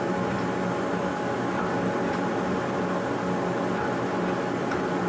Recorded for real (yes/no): yes